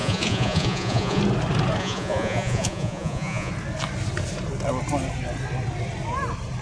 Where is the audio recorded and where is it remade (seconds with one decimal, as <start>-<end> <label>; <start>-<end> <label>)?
0.0-1.2 remade; 1.2-1.8 recorded; 1.8-3.5 remade; 3.5-6.6 recorded